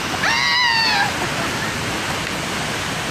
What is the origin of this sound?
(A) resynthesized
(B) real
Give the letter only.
B